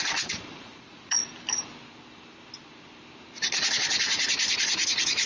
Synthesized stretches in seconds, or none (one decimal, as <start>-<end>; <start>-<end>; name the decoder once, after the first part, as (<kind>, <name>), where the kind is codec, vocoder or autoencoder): 0.5-1.3 (vocoder, Vocos); 3.2-5.3